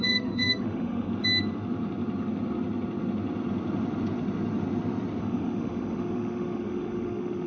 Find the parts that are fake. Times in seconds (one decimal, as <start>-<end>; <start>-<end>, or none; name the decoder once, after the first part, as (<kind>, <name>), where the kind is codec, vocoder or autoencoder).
0.0-1.1 (autoencoder, DAC-VAE); 5.2-7.5